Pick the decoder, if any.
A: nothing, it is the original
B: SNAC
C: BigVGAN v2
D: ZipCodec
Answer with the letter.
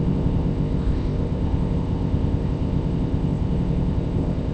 D